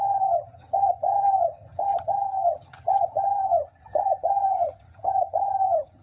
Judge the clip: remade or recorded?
remade